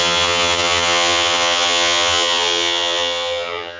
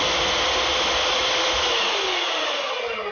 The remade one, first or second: first